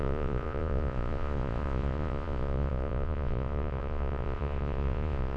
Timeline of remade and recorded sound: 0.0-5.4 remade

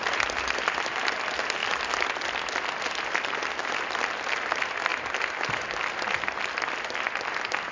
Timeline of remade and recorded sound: 0.0-7.7 recorded

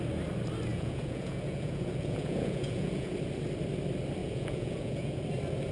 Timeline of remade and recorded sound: 0.0-0.7 recorded; 0.7-3.1 remade; 3.1-4.2 recorded; 4.2-5.2 remade; 5.2-5.7 recorded

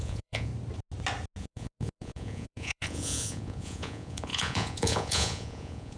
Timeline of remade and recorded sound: 0.0-0.5 remade; 0.5-1.4 recorded; 1.4-6.0 remade

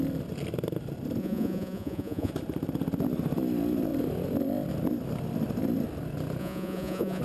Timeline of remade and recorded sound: 0.0-1.2 recorded; 1.2-2.3 remade; 2.3-6.4 recorded; 6.4-7.2 remade